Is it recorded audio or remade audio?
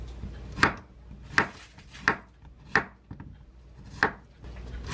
recorded